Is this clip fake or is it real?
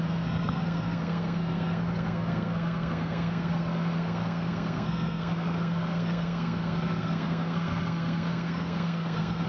fake